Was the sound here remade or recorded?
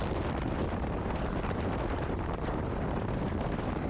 recorded